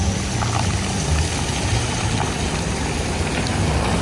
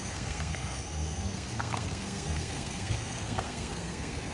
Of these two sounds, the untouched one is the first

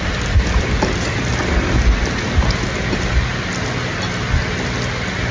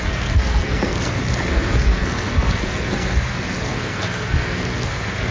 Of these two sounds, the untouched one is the first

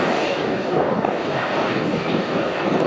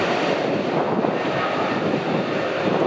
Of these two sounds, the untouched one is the second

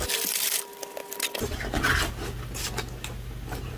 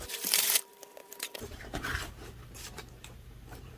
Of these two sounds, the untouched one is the first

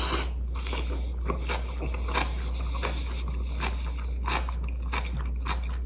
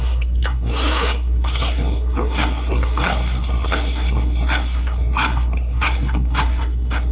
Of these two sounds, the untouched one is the first